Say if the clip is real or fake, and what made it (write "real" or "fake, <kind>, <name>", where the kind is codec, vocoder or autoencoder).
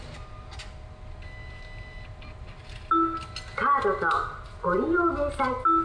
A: real